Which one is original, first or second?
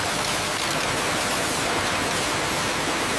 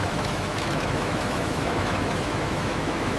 first